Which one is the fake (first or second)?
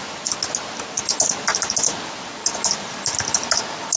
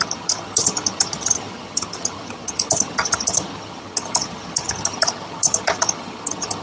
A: second